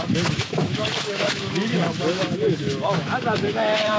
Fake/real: fake